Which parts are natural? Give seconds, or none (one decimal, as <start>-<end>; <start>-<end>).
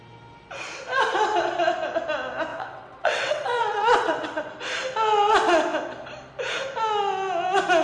0.0-2.5; 4.5-7.8